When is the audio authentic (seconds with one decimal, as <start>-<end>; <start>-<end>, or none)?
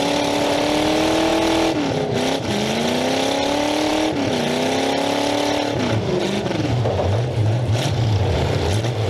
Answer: 0.0-7.4; 8.6-9.1